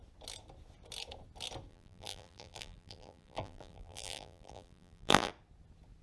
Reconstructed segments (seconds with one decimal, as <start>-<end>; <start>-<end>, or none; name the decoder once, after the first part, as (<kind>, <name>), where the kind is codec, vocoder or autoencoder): 1.7-5.3 (vocoder, BigVGAN v2)